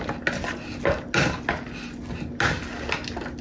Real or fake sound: real